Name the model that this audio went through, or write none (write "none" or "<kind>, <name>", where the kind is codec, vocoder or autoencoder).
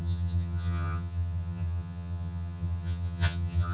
vocoder, HiFi-GAN